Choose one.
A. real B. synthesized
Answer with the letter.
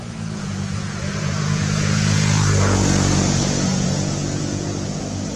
B